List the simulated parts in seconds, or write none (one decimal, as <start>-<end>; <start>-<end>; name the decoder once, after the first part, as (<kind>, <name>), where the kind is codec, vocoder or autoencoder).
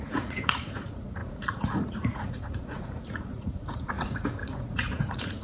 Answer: 0.0-5.4 (vocoder, Vocos)